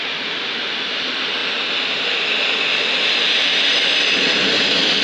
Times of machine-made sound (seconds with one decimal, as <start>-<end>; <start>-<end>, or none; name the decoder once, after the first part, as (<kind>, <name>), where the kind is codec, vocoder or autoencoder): none